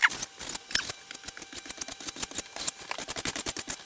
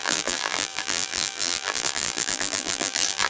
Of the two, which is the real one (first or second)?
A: first